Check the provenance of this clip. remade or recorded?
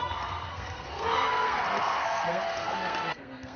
remade